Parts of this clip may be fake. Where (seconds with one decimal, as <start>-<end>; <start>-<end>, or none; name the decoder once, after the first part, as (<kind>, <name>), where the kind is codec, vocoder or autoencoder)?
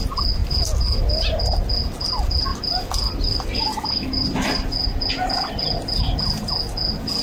2.5-5.1 (vocoder, BigVGAN v2)